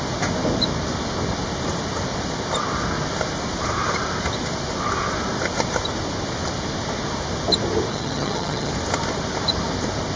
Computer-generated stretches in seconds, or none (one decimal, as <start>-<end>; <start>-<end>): 7.9-8.7